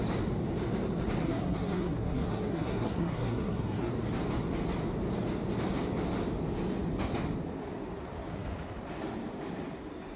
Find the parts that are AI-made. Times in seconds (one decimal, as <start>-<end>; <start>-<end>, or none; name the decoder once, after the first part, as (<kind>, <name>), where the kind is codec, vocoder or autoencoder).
1.2-3.9 (codec, SNAC)